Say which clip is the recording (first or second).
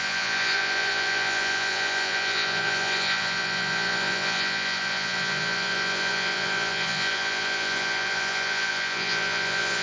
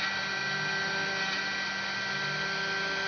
second